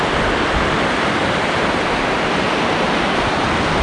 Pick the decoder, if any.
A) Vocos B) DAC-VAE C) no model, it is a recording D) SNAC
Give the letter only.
C